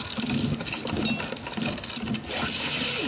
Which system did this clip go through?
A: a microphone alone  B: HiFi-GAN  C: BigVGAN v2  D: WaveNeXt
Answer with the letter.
A